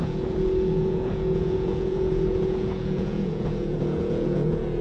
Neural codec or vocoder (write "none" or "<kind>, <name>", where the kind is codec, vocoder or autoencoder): vocoder, Vocos